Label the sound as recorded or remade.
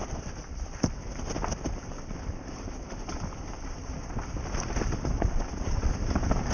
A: recorded